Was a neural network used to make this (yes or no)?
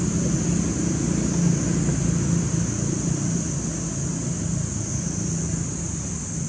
no